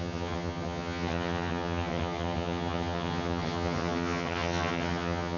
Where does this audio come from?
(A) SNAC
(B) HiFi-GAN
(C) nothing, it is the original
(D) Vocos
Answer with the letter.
B